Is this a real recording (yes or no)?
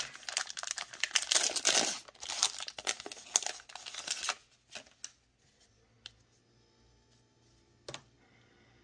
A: yes